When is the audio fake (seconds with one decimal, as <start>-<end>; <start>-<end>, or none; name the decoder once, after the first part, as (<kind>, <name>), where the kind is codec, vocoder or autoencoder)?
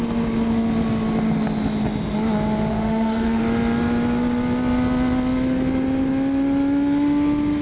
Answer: 2.7-3.4 (autoencoder, DAC-VAE)